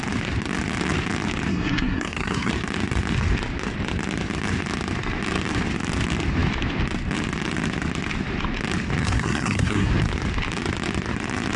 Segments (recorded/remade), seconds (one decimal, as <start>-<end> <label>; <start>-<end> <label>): 0.0-1.5 recorded; 1.5-2.5 remade; 2.5-9.0 recorded; 9.0-9.9 remade; 9.9-11.6 recorded